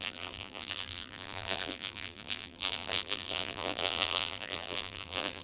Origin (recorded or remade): remade